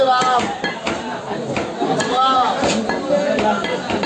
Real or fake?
real